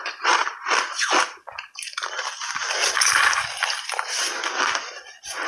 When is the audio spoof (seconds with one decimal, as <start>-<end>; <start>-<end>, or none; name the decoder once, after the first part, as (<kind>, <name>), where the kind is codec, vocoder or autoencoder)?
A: none